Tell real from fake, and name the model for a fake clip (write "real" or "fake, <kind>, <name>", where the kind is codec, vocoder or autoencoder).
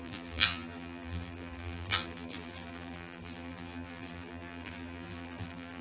fake, vocoder, BigVGAN v2